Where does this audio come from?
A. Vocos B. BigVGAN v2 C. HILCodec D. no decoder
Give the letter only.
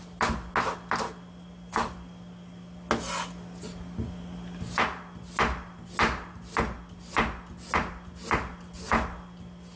D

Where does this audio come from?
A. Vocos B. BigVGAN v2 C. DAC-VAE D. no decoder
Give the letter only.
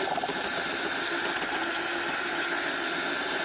D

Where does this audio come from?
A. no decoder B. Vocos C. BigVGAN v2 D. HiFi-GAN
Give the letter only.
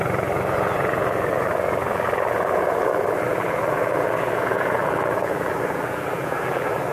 C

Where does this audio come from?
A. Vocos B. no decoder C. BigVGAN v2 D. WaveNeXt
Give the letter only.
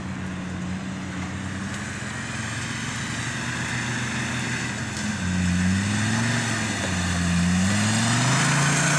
B